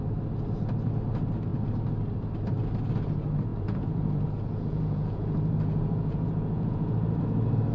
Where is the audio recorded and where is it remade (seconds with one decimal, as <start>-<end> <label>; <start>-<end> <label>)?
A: 0.0-3.5 recorded; 3.5-7.2 remade; 7.2-7.7 recorded